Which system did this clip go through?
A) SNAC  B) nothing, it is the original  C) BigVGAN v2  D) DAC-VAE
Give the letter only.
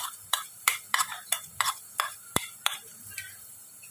C